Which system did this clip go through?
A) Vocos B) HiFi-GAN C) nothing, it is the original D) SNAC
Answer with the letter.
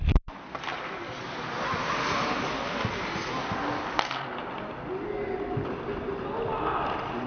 C